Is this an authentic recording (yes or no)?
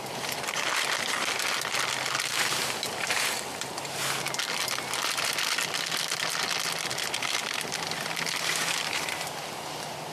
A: yes